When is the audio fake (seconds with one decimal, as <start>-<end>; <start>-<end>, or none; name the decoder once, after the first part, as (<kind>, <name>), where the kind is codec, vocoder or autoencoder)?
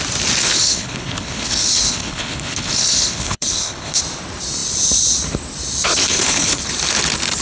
0.4-4.0 (codec, HILCodec); 6.1-6.7